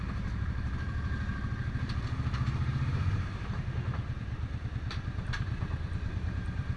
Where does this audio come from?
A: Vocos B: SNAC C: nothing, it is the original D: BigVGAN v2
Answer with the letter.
D